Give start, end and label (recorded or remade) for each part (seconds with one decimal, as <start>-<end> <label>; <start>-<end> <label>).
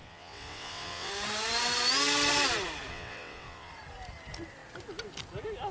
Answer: 0.0-1.1 remade; 1.1-2.9 recorded; 2.9-3.7 remade; 3.7-5.7 recorded